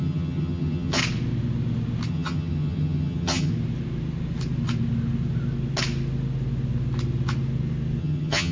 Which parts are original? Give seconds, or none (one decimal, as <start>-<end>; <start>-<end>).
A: 1.0-2.1; 3.5-8.0